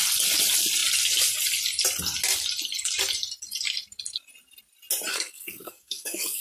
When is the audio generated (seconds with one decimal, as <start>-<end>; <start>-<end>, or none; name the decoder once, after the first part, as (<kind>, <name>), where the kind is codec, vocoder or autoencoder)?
5.1-6.4 (codec, SNAC)